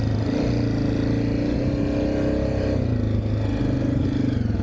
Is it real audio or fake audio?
real